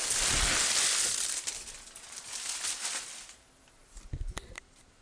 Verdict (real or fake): real